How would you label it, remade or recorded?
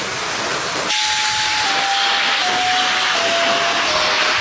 recorded